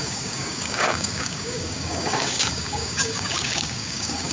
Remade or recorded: remade